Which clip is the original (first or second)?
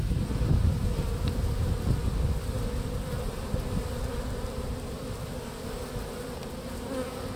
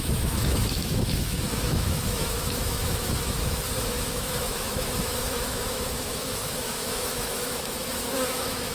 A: first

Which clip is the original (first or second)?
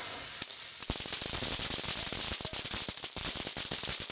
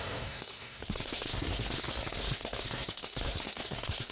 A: first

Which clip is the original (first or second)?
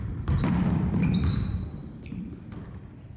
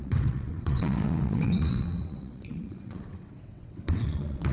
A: first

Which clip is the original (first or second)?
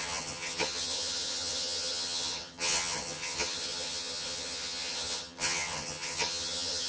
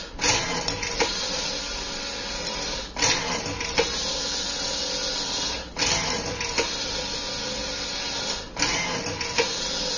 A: second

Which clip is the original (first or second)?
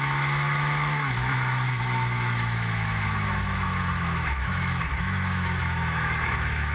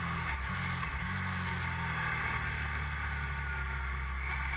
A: second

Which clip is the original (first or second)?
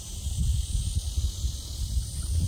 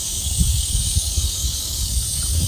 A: first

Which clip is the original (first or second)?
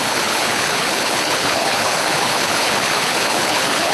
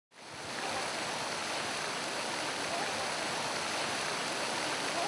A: second